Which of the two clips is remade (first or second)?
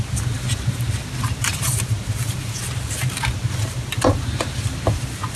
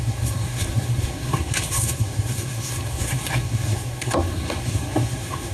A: second